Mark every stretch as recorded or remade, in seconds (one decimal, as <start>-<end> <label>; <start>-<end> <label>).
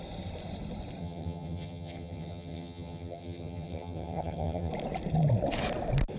0.0-1.0 recorded; 1.0-4.7 remade; 4.7-6.2 recorded